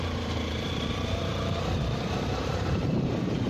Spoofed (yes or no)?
yes